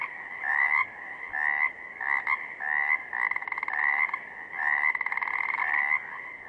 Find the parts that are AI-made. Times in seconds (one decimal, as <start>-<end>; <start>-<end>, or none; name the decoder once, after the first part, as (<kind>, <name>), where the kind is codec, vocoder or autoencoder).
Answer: none